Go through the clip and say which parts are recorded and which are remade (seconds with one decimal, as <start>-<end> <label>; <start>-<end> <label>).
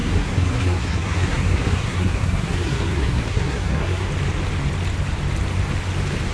0.0-4.1 remade; 4.1-6.3 recorded